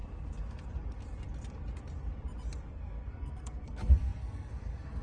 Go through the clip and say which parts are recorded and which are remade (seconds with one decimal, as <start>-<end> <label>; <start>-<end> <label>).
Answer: 0.0-2.7 recorded; 2.7-5.0 remade